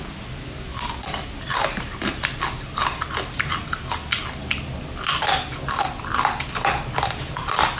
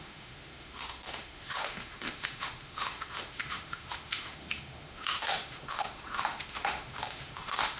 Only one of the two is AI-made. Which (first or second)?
second